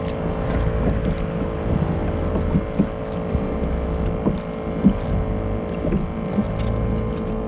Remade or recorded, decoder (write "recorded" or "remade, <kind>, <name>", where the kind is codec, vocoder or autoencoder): recorded